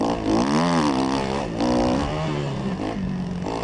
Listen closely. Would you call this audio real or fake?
real